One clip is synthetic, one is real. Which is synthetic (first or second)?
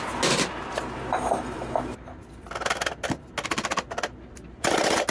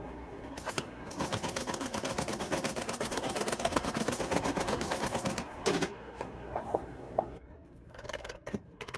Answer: second